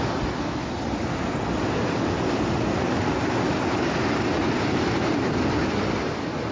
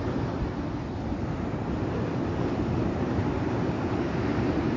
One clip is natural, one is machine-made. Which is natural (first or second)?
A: first